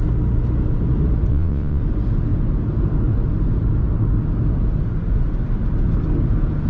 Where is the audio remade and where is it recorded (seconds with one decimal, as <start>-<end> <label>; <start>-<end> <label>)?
0.0-1.3 recorded; 1.3-1.8 remade; 1.8-6.7 recorded